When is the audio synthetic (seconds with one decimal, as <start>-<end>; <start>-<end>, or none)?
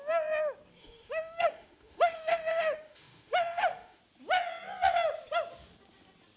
0.8-4.0